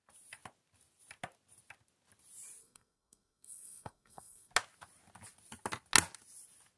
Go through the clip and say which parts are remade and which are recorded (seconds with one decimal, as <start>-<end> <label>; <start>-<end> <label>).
0.0-2.6 recorded; 2.6-4.5 remade; 4.5-6.8 recorded